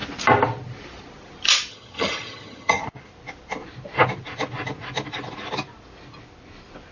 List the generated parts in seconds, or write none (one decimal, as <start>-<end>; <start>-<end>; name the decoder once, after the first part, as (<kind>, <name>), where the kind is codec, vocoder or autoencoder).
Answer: 1.7-2.8 (vocoder, HiFi-GAN)